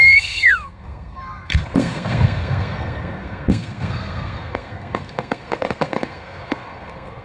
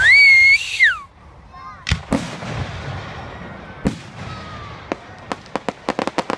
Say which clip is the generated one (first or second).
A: first